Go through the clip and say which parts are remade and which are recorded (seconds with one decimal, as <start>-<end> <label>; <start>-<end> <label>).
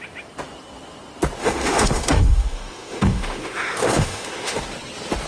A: 0.0-1.4 recorded; 1.4-4.6 remade; 4.6-5.3 recorded